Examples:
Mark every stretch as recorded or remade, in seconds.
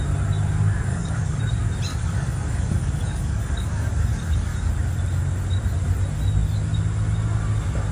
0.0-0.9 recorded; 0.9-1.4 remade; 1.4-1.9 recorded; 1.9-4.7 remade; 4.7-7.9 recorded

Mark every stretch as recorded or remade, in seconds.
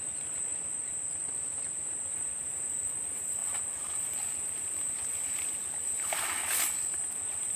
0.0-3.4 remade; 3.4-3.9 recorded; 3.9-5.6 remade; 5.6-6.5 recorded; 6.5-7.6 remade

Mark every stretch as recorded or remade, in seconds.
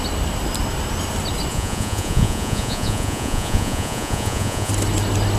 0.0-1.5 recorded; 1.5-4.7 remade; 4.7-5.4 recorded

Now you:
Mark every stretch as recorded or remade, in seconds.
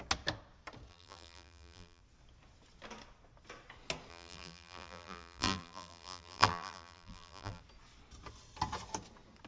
0.0-0.9 recorded; 0.9-2.0 remade; 2.0-4.1 recorded; 4.1-7.6 remade; 7.6-9.5 recorded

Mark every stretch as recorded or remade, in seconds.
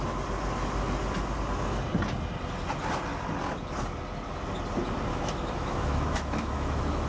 0.0-5.1 recorded; 5.1-7.1 remade